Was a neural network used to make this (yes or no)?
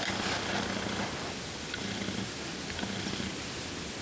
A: no